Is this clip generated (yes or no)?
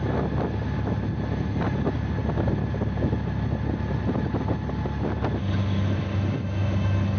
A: no